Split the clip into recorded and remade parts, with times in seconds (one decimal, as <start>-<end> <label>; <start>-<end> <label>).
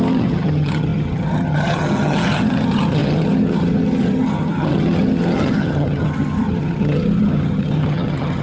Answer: 0.0-8.4 remade